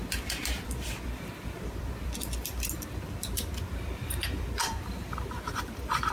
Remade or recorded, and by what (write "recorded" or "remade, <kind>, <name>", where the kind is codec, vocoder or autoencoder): remade, vocoder, BigVGAN v2